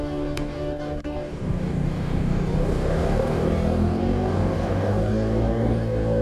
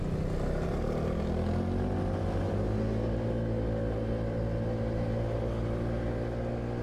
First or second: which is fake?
first